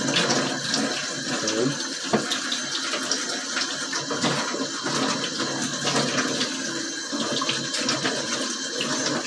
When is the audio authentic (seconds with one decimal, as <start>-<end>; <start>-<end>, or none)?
0.0-9.3